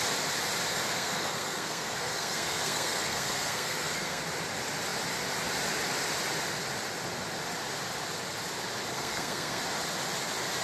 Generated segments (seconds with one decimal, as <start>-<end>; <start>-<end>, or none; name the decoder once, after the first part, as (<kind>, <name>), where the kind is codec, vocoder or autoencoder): 0.7-4.2 (codec, SNAC); 8.9-9.6